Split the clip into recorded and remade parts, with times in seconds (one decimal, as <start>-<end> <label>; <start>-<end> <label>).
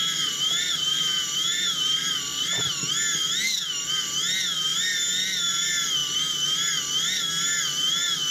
0.0-1.8 remade; 1.8-2.3 recorded; 2.3-2.8 remade; 2.8-8.3 recorded